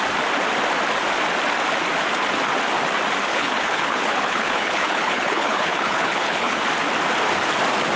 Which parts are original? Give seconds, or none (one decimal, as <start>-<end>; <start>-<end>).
0.0-3.3; 6.6-8.0